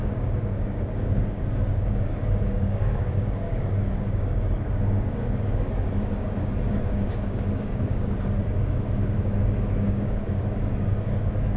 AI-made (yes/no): yes